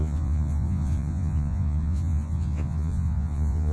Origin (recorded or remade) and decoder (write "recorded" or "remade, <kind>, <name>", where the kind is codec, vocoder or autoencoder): remade, vocoder, Vocos